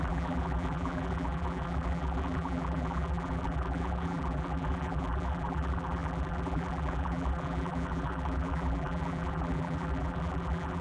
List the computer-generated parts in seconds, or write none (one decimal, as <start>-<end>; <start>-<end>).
0.0-10.8